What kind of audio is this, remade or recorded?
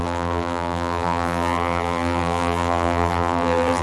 remade